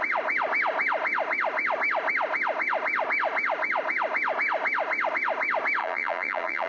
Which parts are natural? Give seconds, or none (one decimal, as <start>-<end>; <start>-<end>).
0.0-5.8